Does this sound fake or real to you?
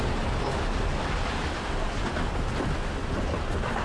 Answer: real